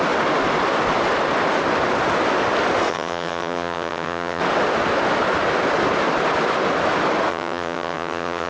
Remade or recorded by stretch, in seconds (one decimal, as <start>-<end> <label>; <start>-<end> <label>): 0.0-2.9 recorded; 2.9-4.4 remade; 4.4-7.3 recorded; 7.3-8.5 remade